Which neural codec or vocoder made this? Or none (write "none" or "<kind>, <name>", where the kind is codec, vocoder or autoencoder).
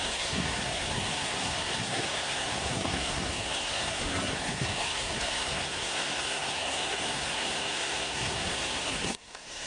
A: codec, SNAC